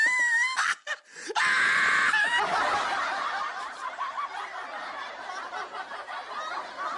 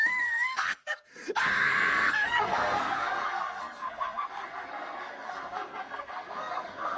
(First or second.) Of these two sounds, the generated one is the second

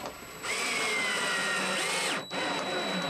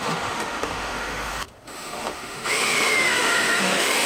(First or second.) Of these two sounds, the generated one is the second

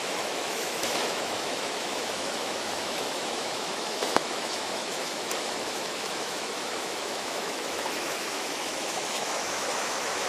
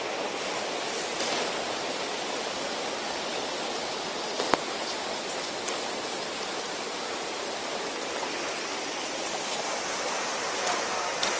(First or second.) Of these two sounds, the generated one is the first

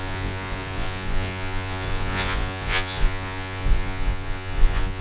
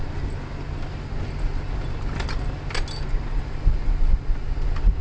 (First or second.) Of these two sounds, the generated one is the first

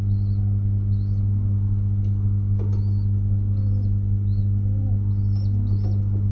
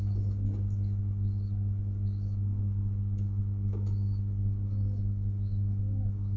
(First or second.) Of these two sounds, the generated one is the second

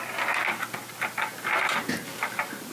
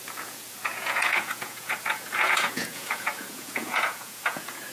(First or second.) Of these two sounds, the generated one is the second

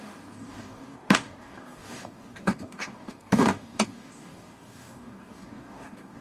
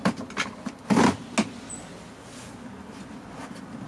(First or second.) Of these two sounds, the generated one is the first